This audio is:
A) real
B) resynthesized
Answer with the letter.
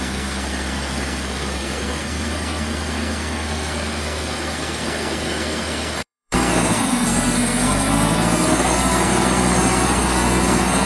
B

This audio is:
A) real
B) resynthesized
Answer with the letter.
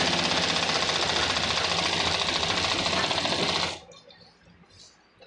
A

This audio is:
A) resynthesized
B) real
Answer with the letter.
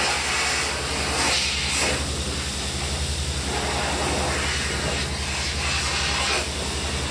B